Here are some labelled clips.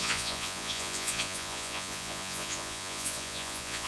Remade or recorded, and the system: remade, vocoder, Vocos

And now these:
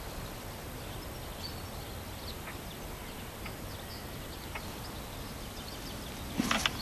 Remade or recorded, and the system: recorded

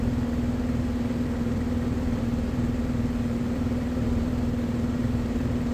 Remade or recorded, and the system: remade, vocoder, BigVGAN v2